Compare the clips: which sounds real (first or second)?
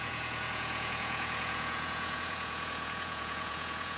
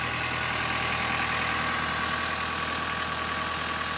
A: second